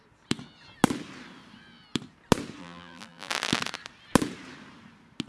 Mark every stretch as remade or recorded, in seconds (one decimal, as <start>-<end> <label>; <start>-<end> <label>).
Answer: 0.0-2.6 recorded; 2.6-3.3 remade; 3.3-5.3 recorded